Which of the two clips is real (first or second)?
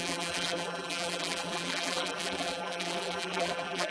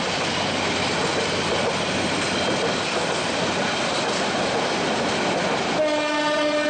second